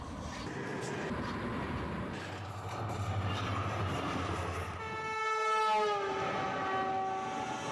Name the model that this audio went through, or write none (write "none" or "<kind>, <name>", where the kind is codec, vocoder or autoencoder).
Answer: none